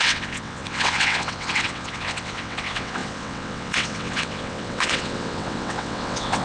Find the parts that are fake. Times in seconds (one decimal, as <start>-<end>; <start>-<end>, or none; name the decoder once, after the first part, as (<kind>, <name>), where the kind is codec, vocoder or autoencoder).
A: 0.0-6.4 (vocoder, WaveNeXt)